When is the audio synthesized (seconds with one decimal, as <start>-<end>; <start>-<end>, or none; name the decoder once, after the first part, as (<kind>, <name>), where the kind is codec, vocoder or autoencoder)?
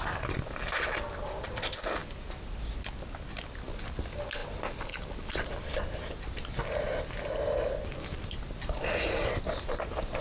none